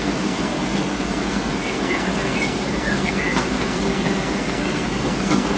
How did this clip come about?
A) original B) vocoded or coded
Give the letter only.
B